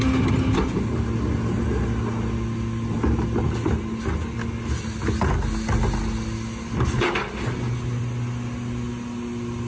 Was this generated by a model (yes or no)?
no